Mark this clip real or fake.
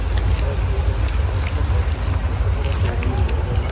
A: real